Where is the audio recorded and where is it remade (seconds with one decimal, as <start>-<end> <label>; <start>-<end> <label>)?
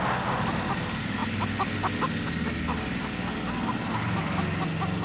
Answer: 0.0-5.0 recorded